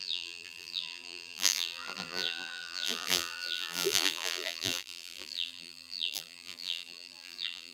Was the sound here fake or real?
fake